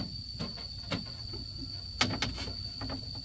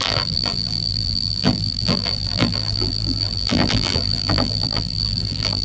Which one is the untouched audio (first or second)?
first